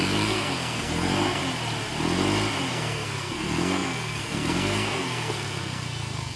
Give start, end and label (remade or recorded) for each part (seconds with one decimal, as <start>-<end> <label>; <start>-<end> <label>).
0.0-1.4 remade; 1.4-2.7 recorded; 2.7-6.4 remade